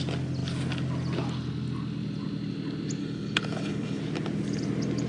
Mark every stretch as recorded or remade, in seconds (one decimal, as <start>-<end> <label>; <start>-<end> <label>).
0.0-3.0 recorded; 3.0-4.0 remade; 4.0-5.1 recorded